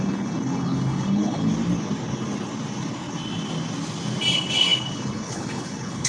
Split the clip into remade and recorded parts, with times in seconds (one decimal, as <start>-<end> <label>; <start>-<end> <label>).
0.0-1.5 remade; 1.5-4.3 recorded; 4.3-6.1 remade